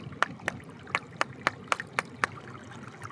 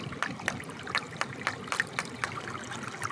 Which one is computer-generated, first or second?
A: second